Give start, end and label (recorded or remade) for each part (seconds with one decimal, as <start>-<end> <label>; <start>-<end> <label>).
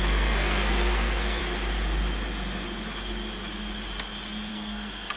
0.0-1.4 remade; 1.4-4.5 recorded; 4.5-5.2 remade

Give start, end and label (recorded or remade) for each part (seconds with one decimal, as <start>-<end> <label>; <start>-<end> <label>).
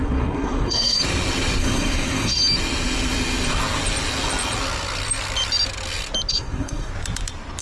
0.0-1.0 remade; 1.0-1.6 recorded; 1.6-2.4 remade; 2.4-6.3 recorded; 6.3-6.9 remade; 6.9-7.6 recorded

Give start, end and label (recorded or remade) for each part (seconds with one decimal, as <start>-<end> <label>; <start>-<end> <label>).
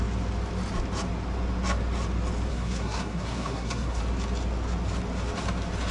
0.0-2.5 recorded; 2.5-4.0 remade; 4.0-5.9 recorded